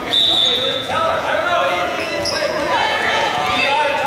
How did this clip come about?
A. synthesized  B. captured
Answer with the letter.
A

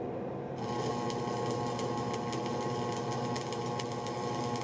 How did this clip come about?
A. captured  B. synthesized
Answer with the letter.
A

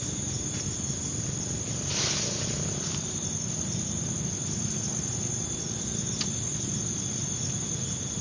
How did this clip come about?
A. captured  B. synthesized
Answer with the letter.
A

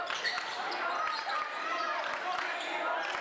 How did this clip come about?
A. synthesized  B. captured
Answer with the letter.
B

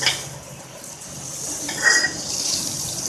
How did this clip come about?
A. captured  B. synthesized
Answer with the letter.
B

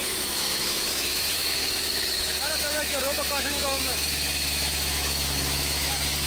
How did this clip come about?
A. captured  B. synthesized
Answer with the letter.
B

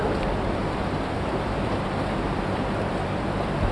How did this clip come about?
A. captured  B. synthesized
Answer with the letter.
B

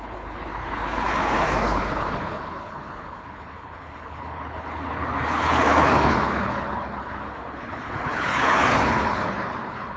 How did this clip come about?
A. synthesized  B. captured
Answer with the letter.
A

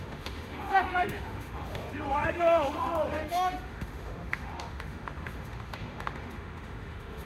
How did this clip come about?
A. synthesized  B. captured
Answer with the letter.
A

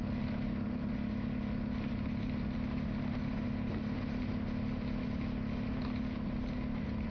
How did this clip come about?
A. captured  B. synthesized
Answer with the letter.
A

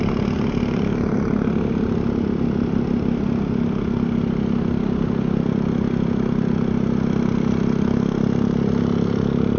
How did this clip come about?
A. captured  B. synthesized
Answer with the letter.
A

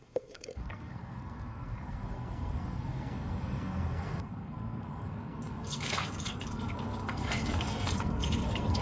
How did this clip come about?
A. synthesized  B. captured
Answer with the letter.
A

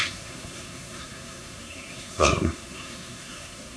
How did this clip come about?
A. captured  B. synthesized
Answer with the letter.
B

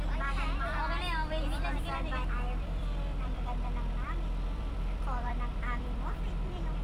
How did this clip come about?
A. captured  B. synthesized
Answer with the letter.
B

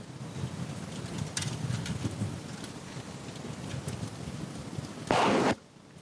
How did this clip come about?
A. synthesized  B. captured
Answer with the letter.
B